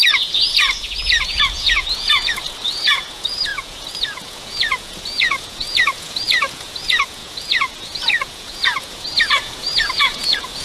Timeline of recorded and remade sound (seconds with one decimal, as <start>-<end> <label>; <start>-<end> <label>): 0.0-10.6 remade